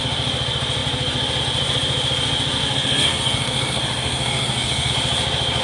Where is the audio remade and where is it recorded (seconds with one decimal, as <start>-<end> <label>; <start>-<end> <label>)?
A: 0.0-2.6 recorded; 2.6-4.9 remade; 4.9-5.6 recorded